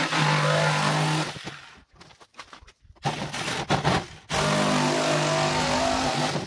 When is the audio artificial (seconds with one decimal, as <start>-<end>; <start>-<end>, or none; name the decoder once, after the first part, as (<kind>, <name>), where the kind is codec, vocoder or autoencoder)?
none